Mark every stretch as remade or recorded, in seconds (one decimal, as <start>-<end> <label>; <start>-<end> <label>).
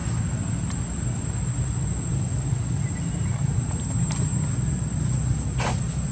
0.0-6.1 recorded